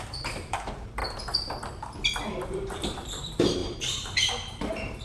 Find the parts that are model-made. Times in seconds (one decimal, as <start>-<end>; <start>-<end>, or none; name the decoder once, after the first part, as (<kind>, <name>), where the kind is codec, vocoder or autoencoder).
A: 0.0-1.0 (vocoder, BigVGAN v2); 2.2-5.0